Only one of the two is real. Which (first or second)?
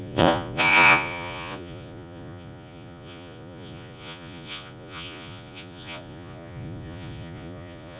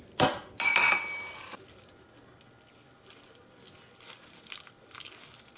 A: second